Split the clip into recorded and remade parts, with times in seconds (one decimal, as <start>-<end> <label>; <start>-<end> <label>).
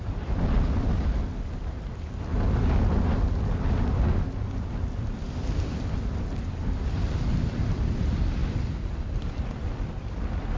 0.0-2.3 remade; 2.3-4.7 recorded; 4.7-6.6 remade; 6.6-7.3 recorded; 7.3-10.6 remade